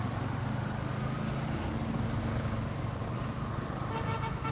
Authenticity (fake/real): real